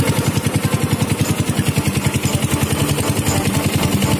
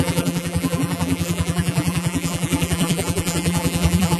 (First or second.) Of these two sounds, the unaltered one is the first